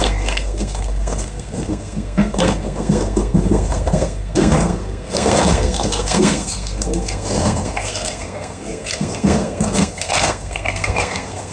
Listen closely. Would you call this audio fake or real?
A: fake